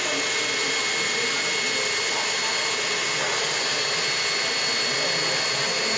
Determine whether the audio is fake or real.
real